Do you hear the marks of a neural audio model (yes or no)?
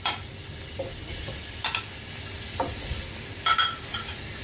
no